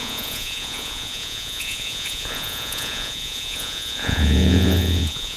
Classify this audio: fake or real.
fake